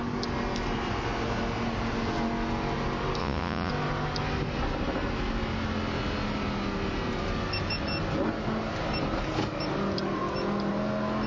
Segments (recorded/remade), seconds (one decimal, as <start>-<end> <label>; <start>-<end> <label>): 0.0-3.2 recorded; 3.2-3.7 remade; 3.7-11.3 recorded